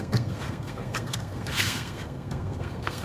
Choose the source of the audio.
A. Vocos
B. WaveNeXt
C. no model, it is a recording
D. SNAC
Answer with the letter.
D